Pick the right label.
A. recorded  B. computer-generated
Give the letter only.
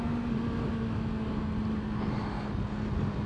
A